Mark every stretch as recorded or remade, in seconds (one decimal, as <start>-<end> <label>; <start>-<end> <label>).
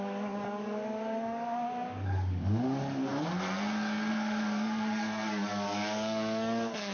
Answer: 0.0-3.1 remade; 3.1-4.1 recorded; 4.1-6.9 remade